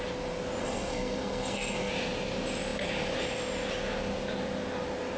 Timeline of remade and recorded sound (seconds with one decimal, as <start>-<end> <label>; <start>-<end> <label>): 0.0-0.6 recorded; 0.6-1.9 remade; 1.9-5.2 recorded